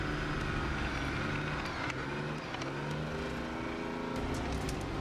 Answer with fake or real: real